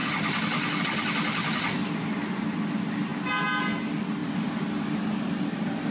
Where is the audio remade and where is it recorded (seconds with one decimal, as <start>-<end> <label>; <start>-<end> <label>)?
0.0-5.9 recorded

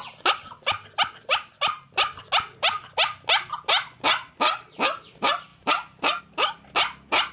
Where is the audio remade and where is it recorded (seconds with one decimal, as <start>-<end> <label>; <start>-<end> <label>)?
0.0-7.3 recorded

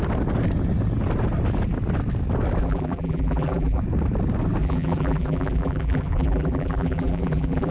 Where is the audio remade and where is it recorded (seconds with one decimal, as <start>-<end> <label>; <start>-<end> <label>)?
0.0-2.6 recorded; 2.6-3.8 remade; 3.8-4.6 recorded; 4.6-7.7 remade